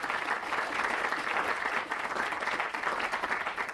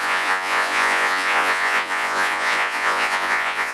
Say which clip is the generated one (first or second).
second